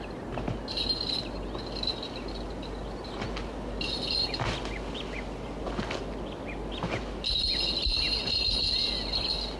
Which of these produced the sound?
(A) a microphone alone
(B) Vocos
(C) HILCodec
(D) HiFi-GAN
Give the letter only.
A